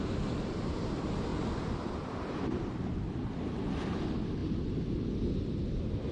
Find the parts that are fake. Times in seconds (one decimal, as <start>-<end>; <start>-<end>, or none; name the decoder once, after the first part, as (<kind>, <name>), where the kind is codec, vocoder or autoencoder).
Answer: 1.3-2.9 (vocoder, BigVGAN v2)